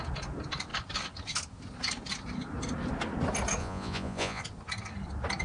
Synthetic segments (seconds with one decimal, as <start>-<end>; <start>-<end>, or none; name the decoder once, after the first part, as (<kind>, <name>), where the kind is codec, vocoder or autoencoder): 3.6-4.4 (vocoder, Vocos)